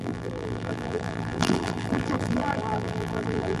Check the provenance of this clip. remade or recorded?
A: remade